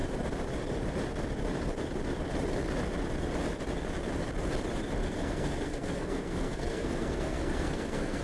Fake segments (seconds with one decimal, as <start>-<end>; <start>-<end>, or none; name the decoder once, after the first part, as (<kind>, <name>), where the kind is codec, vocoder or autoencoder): 5.0-8.2 (codec, SNAC)